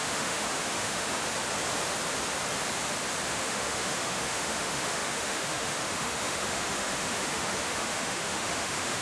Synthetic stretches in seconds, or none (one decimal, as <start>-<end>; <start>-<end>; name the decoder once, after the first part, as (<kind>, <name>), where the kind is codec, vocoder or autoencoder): 0.0-1.2 (autoencoder, DAC-VAE); 3.3-9.0